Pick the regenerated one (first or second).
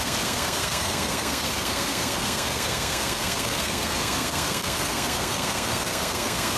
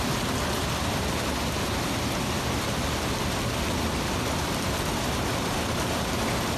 first